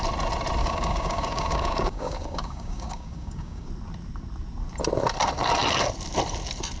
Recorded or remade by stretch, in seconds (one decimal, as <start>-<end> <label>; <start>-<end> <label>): 0.0-0.6 recorded; 0.6-3.7 remade; 3.7-6.8 recorded